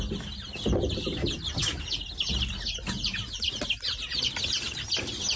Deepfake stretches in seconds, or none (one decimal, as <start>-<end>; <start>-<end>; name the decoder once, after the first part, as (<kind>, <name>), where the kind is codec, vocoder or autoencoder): none